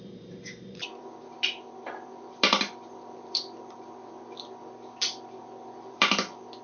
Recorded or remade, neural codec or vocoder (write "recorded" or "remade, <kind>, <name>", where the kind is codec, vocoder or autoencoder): remade, vocoder, BigVGAN v2